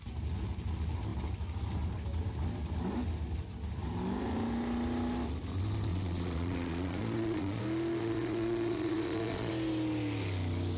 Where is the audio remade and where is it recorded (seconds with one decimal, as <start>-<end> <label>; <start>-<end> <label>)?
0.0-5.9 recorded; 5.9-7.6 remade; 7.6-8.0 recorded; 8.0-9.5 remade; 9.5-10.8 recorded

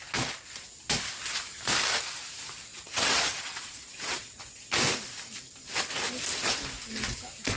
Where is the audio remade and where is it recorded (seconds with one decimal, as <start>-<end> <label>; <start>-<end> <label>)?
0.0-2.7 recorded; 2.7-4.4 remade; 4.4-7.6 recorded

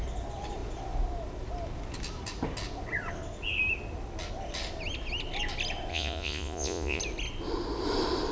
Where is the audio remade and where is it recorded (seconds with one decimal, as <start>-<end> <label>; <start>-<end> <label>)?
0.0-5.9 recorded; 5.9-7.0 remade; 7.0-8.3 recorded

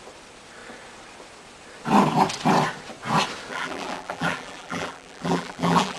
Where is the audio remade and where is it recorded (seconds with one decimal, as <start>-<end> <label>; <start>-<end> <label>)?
0.0-3.5 recorded; 3.5-6.0 remade